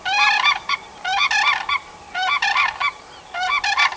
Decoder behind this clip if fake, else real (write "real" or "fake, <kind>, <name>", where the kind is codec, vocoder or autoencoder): real